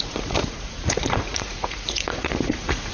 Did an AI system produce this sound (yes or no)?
yes